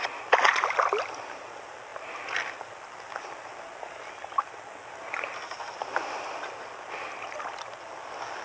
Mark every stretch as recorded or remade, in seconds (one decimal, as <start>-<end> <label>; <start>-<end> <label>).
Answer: 0.0-8.4 recorded